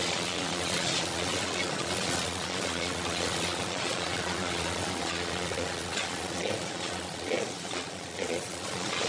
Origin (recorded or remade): remade